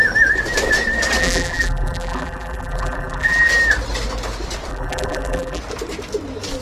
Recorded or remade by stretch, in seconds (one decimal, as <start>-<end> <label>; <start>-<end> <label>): 0.0-1.2 recorded; 1.2-3.5 remade; 3.5-4.7 recorded; 4.7-5.6 remade; 5.6-6.6 recorded